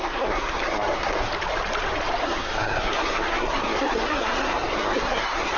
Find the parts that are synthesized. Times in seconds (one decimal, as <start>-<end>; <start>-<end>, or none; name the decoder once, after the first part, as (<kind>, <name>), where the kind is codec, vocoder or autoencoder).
0.0-1.3 (codec, SNAC); 2.2-5.6